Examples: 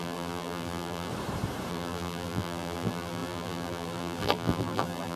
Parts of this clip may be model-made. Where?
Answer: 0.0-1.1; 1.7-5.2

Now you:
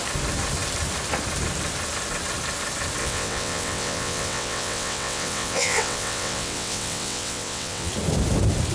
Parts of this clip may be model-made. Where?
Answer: 3.0-7.9

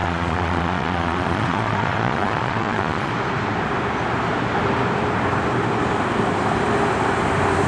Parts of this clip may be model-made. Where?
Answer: 0.0-3.1